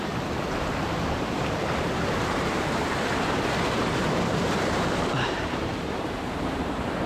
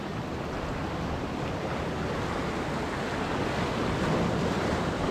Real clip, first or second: second